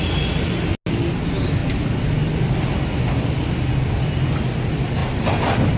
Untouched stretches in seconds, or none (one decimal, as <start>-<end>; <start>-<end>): 0.0-5.8